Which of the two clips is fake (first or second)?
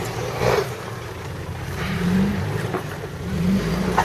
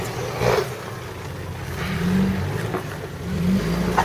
first